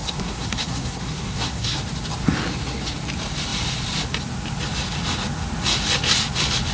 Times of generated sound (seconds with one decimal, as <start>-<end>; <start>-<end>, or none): 0.0-1.8